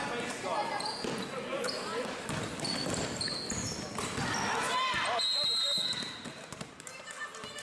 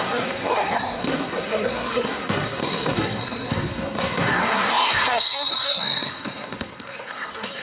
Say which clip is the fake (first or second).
second